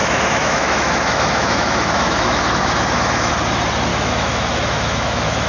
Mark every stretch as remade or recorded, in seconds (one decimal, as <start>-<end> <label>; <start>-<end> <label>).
0.0-3.3 remade; 3.3-3.9 recorded; 3.9-5.5 remade